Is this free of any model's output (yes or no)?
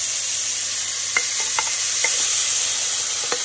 yes